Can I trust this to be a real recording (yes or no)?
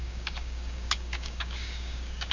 no